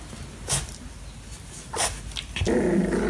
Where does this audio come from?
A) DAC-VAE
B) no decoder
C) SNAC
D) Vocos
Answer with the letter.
B